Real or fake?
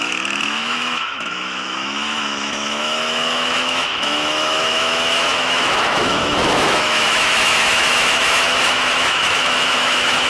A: fake